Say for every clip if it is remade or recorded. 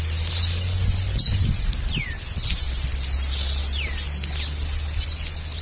recorded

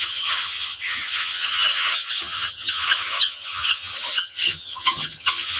remade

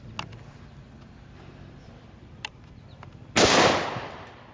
recorded